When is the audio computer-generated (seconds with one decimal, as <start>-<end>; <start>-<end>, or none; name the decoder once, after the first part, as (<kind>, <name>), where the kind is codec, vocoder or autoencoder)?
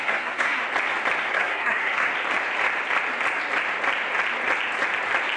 0.0-0.6 (codec, SNAC); 1.3-2.1